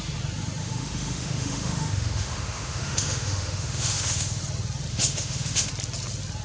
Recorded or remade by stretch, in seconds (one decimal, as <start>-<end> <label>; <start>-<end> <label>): 0.0-0.6 recorded; 0.6-4.4 remade; 4.4-4.9 recorded; 4.9-5.7 remade; 5.7-6.4 recorded